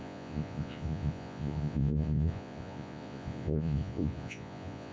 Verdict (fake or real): fake